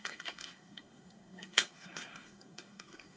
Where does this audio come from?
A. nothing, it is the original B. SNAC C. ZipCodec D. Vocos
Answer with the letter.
B